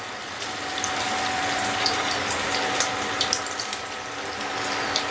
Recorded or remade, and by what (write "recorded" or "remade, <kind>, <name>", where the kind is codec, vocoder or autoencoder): recorded